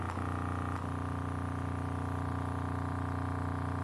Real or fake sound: real